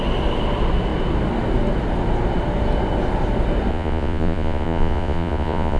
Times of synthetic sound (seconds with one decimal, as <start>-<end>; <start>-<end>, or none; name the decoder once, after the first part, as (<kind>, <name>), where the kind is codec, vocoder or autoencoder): 3.7-5.8 (vocoder, Vocos)